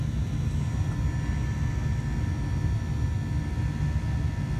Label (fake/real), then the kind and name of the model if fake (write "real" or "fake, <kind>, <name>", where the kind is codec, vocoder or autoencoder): real